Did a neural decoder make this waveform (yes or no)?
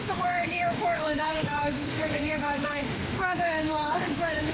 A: yes